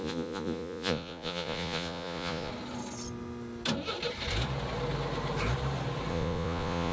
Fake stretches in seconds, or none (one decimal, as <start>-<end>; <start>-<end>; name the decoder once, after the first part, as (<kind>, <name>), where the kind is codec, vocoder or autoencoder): 0.0-2.5 (vocoder, Vocos); 6.1-6.9